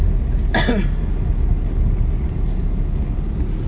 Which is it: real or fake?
real